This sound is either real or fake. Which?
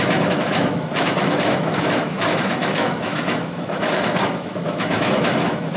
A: fake